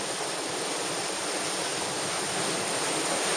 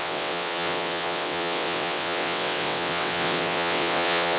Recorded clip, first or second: first